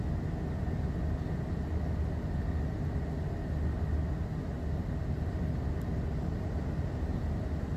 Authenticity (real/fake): real